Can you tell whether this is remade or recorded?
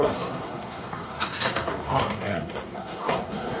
remade